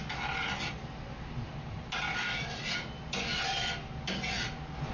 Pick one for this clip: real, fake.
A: real